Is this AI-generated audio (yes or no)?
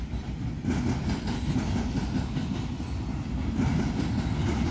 no